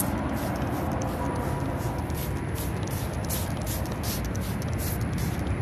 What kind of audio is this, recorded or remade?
recorded